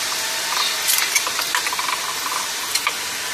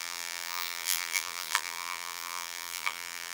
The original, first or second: first